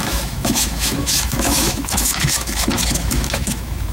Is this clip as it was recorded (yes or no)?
no